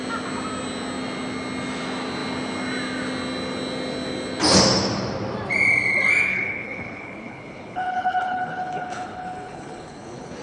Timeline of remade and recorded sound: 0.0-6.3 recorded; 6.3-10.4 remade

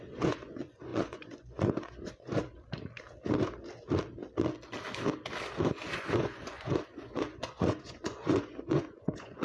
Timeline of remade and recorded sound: 0.0-2.5 remade; 2.5-5.6 recorded; 5.6-9.4 remade